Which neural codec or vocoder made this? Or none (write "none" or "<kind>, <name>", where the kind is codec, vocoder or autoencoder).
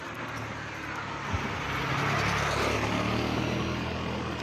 none